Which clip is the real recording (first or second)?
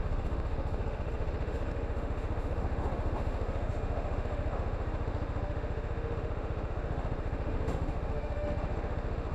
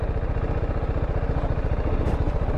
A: second